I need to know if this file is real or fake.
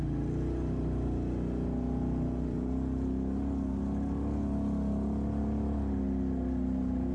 real